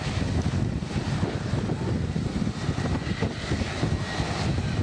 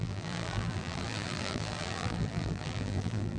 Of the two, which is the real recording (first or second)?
first